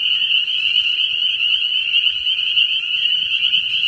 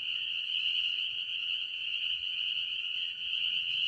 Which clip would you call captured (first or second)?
first